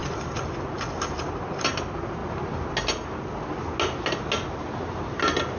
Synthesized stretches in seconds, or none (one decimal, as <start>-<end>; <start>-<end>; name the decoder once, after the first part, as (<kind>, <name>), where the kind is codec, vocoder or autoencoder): none